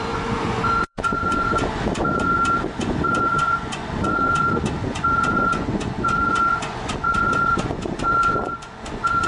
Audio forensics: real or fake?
fake